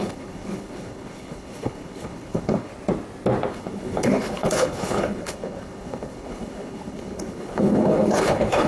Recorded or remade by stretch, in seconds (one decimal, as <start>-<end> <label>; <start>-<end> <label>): 0.0-2.7 remade; 2.7-3.5 recorded; 3.5-8.7 remade